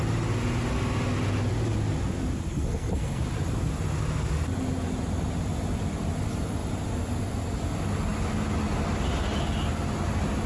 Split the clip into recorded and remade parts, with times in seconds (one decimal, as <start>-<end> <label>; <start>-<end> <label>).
0.0-2.5 recorded; 2.5-3.2 remade; 3.2-10.5 recorded